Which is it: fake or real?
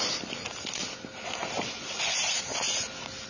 real